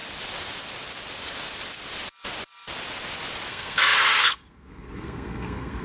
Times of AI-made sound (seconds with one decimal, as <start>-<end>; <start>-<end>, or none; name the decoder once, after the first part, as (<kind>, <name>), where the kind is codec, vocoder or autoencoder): 3.5-5.8 (codec, SNAC)